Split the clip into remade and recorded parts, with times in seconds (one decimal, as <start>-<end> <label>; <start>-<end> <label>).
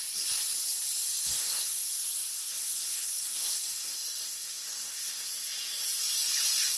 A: 0.0-1.2 recorded; 1.2-5.3 remade; 5.3-6.8 recorded